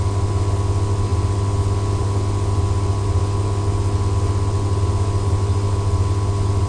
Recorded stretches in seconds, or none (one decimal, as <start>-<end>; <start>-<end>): 0.0-6.7